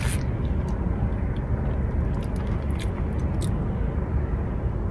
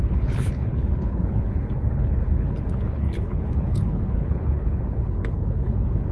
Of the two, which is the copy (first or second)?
second